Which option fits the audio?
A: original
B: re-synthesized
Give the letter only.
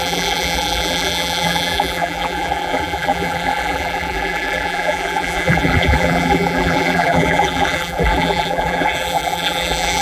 B